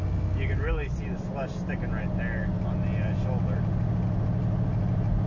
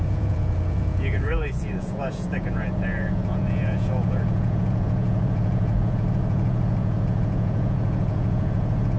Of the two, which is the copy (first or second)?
second